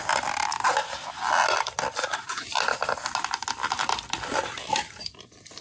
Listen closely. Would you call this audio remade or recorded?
recorded